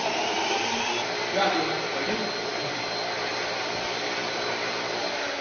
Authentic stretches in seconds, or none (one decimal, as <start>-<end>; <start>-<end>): 0.0-5.4